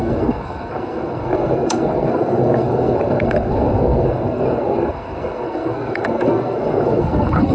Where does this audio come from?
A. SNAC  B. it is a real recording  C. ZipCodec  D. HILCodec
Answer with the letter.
A